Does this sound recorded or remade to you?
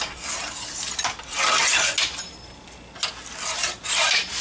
recorded